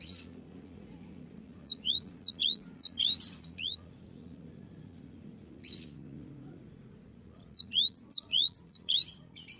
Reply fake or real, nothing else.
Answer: fake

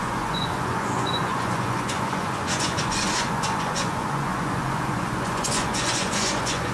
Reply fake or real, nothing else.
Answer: fake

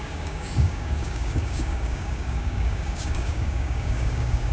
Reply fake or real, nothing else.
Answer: fake